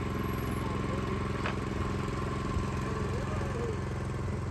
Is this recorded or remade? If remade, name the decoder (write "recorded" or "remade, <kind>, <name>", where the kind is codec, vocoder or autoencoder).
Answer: recorded